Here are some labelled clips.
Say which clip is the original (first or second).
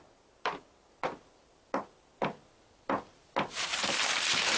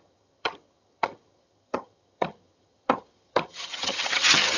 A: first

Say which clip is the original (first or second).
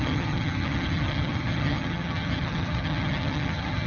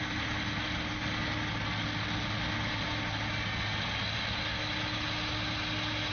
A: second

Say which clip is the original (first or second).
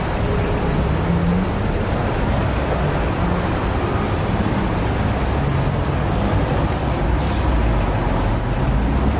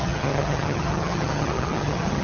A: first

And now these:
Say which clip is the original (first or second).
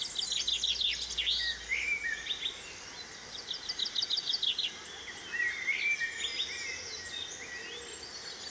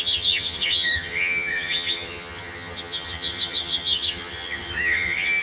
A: first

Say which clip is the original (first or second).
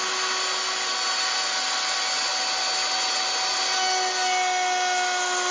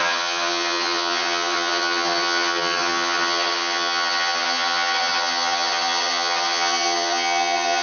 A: first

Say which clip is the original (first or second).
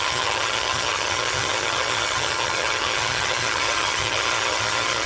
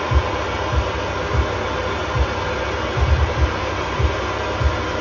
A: second